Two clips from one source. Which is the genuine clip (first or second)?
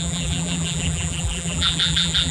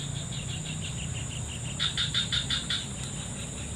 second